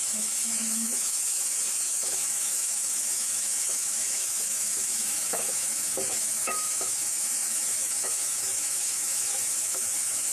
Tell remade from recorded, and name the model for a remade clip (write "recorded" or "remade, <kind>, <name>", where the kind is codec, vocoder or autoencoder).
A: remade, autoencoder, DAC-VAE